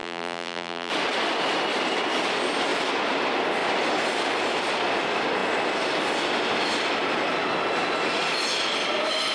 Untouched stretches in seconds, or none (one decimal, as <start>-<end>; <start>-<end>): 0.9-9.3